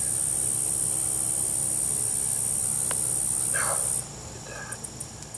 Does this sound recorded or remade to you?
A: recorded